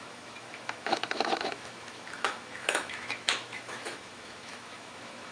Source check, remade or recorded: remade